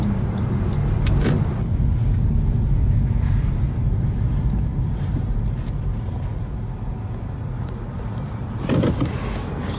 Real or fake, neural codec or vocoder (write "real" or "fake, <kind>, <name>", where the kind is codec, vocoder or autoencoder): real